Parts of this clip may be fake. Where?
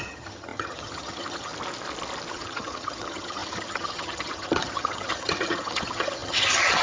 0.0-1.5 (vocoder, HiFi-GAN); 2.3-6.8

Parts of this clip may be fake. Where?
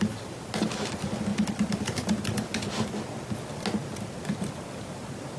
none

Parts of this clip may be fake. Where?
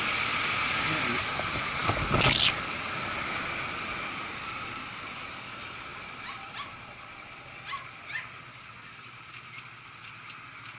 none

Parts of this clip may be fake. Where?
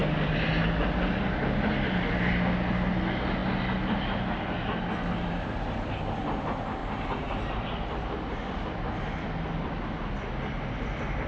6.8-8.5 (vocoder, BigVGAN v2)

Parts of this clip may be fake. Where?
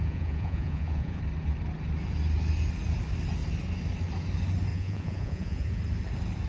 0.0-1.2 (vocoder, Vocos); 4.7-5.8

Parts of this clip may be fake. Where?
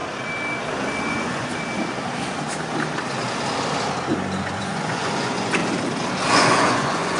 1.0-1.5 (vocoder, Vocos); 4.4-5.6; 6.3-7.2